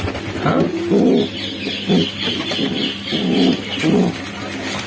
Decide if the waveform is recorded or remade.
recorded